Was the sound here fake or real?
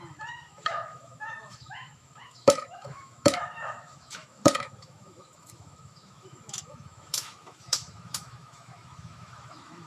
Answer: fake